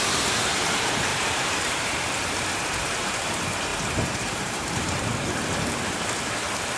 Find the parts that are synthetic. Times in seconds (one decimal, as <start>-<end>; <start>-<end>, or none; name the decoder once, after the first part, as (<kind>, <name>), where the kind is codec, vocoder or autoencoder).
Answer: 1.1-2.2 (vocoder, BigVGAN v2); 3.7-5.0